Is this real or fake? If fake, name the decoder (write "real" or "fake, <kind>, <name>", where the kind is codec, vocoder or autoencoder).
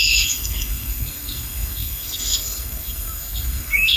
fake, codec, SNAC